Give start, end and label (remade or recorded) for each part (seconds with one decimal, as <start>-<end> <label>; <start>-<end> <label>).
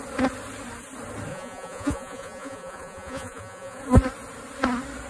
0.0-1.3 recorded; 1.3-3.8 remade; 3.8-5.1 recorded